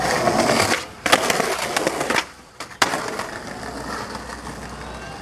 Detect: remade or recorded recorded